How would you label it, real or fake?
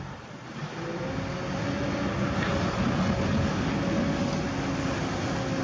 real